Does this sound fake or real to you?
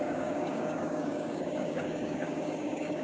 fake